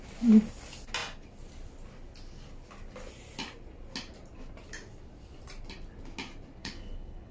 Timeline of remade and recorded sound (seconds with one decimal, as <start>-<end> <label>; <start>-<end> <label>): 0.0-6.6 recorded; 6.6-7.3 remade